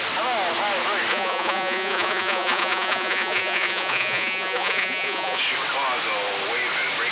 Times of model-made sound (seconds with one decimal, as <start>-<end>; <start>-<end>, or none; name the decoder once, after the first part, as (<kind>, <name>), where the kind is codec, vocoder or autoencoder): 1.1-5.4 (vocoder, Vocos)

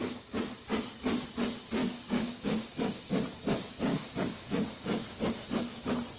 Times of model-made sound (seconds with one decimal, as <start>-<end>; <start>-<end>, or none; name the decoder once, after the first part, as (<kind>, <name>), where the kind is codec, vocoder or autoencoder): 1.8-3.1 (codec, DAC); 3.9-5.3